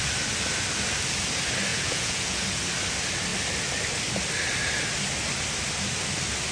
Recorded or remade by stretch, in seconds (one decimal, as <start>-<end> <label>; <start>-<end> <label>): 0.0-1.7 recorded; 1.7-2.4 remade; 2.4-6.5 recorded